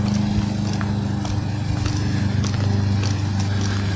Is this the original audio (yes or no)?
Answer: yes